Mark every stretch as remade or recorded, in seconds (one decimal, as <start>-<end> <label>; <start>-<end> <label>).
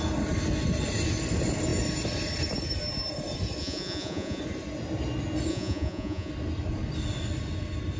0.0-3.6 recorded; 3.6-4.4 remade; 4.4-5.5 recorded; 5.5-6.3 remade; 6.3-8.0 recorded